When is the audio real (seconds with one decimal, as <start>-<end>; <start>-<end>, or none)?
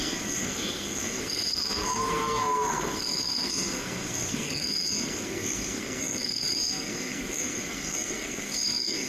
none